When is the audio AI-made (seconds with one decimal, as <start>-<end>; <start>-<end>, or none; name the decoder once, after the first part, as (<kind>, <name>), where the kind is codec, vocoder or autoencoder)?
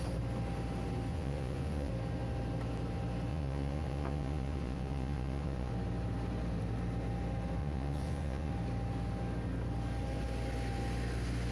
1.1-1.9 (vocoder, Vocos); 3.3-5.7; 7.6-8.5